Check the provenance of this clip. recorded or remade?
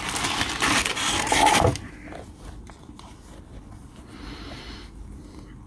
recorded